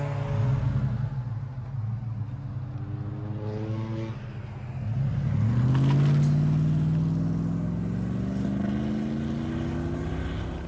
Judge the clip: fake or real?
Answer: real